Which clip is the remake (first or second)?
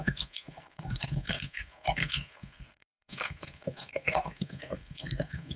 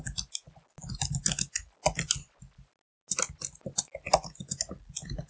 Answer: first